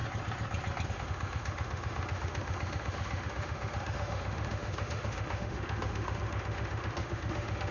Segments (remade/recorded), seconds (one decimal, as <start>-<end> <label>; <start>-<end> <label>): 0.0-0.9 recorded; 0.9-7.7 remade